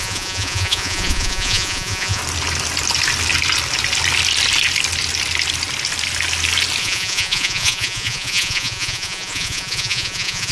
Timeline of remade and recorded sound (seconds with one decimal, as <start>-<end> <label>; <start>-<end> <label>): 0.0-2.2 remade; 2.2-6.8 recorded; 6.8-10.5 remade